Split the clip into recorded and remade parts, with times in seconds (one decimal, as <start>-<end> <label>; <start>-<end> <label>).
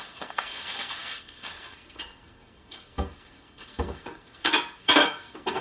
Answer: 0.0-5.6 remade